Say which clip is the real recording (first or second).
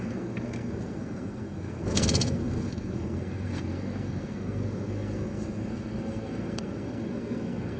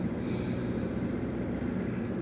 second